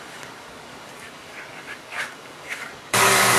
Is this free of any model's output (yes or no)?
no